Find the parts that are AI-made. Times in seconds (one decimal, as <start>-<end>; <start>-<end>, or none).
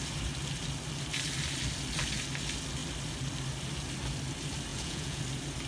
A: 4.7-5.2